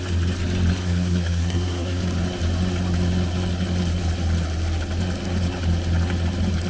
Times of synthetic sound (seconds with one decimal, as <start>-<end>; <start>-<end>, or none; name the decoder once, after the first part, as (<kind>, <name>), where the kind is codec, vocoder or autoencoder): 0.8-2.0 (codec, SNAC)